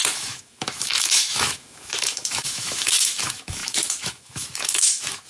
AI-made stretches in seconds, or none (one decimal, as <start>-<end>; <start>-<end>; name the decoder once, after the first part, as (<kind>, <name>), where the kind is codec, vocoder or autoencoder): 0.0-5.3 (autoencoder, DAC-VAE)